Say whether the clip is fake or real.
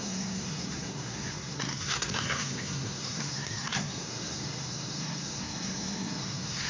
fake